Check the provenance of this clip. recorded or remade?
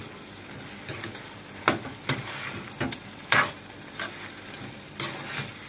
recorded